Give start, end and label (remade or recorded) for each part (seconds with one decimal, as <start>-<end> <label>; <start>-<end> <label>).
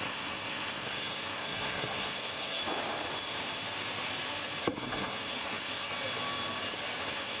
0.0-2.6 remade; 2.6-4.6 recorded; 4.6-5.9 remade; 5.9-7.0 recorded; 7.0-7.4 remade